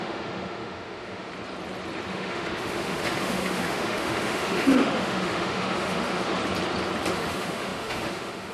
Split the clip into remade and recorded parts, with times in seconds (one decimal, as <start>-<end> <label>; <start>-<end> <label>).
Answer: 0.0-1.3 remade; 1.3-2.1 recorded; 2.1-6.4 remade; 6.4-7.1 recorded; 7.1-8.5 remade